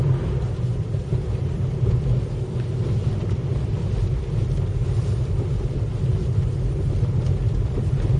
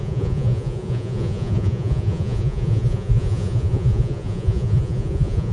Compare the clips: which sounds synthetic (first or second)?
second